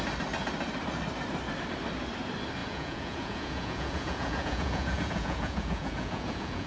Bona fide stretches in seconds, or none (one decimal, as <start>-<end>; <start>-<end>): 0.0-2.6